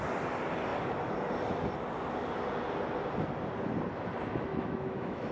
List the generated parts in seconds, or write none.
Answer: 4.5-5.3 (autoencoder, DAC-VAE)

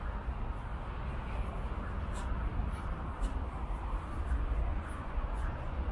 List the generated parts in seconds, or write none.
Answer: 4.7-5.9 (vocoder, Vocos)

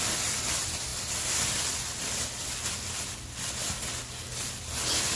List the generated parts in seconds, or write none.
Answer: none

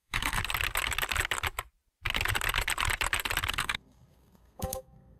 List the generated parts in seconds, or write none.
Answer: 0.0-0.4 (codec, SNAC); 3.5-5.2